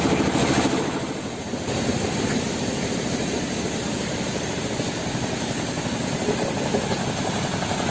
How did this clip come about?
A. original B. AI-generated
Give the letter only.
A